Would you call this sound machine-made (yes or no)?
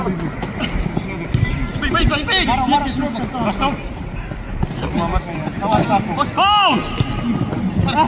no